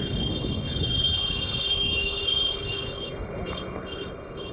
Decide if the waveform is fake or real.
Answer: fake